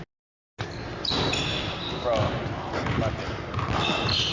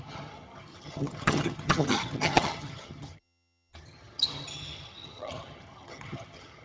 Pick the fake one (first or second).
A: second